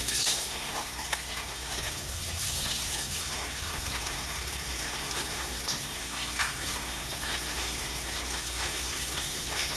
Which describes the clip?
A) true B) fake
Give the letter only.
B